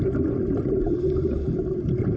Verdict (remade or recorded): recorded